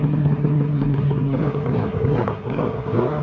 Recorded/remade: remade